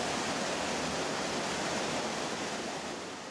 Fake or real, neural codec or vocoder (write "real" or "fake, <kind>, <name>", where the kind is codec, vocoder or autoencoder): real